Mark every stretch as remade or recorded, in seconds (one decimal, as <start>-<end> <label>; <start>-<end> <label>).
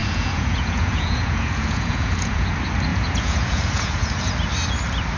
0.0-2.5 remade; 2.5-2.9 recorded; 2.9-4.3 remade; 4.3-5.2 recorded